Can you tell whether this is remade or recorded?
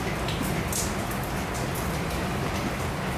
recorded